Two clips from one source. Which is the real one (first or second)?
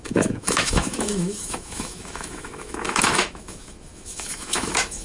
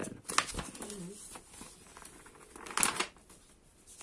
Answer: second